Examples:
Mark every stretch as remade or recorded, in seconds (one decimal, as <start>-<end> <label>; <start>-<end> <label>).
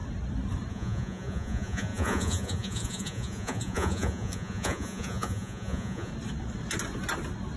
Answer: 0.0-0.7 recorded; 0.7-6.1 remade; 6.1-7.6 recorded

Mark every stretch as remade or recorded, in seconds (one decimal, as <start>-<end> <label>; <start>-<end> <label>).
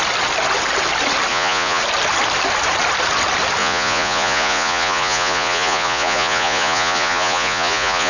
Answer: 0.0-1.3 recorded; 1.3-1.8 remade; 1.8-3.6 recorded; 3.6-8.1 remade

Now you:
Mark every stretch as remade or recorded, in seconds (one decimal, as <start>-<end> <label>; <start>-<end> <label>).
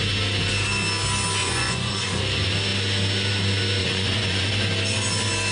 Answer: 0.0-1.4 recorded; 1.4-2.2 remade; 2.2-3.8 recorded; 3.8-4.5 remade; 4.5-5.5 recorded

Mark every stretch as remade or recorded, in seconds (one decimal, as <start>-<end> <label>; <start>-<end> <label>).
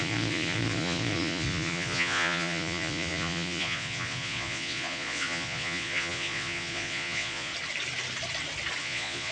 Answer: 0.0-7.5 remade; 7.5-8.8 recorded; 8.8-9.3 remade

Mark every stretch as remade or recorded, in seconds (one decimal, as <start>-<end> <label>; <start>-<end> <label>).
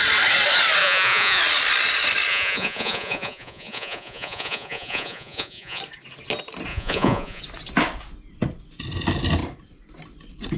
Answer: 0.0-0.8 recorded; 0.8-1.4 remade; 1.4-2.3 recorded; 2.3-5.8 remade; 5.8-6.7 recorded; 6.7-7.4 remade; 7.4-10.6 recorded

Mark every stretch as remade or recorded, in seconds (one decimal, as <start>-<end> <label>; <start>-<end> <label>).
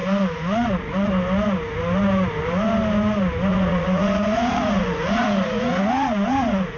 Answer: 0.0-1.1 remade; 1.1-3.5 recorded; 3.5-6.8 remade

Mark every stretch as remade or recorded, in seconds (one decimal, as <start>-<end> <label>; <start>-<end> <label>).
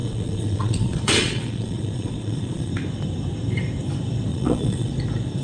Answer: 0.0-2.7 remade; 2.7-4.3 recorded; 4.3-4.9 remade; 4.9-5.4 recorded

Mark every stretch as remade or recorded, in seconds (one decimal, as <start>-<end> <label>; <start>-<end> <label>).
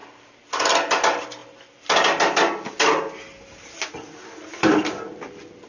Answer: 0.0-5.7 recorded